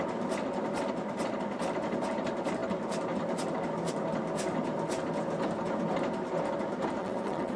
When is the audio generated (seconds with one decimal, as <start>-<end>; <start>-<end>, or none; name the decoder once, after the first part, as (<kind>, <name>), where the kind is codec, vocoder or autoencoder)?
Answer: 7.0-7.6 (vocoder, WaveNeXt)